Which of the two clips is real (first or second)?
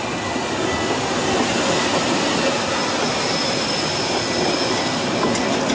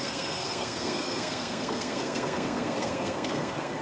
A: first